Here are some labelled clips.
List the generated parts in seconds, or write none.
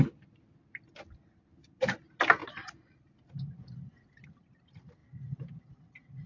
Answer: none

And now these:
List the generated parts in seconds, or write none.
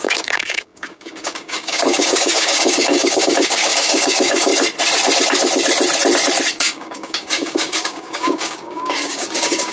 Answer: 0.0-4.5; 6.5-9.7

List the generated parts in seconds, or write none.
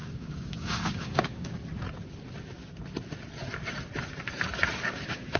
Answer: 0.0-1.6; 4.8-5.4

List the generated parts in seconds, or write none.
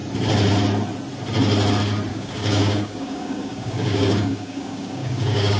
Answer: 2.1-5.6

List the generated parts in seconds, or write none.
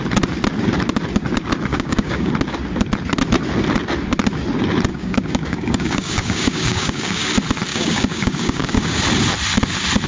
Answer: 1.7-2.3; 4.9-7.3; 7.7-9.0